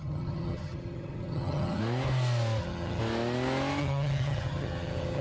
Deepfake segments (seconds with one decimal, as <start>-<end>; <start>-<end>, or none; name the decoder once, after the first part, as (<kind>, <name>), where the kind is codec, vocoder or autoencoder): 0.0-1.8 (vocoder, HiFi-GAN); 2.6-3.0; 3.8-5.2